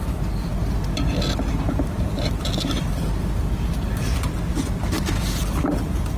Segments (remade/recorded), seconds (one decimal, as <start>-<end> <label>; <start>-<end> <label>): 0.0-6.2 recorded